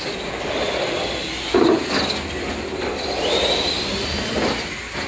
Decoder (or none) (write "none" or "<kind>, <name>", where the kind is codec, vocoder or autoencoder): none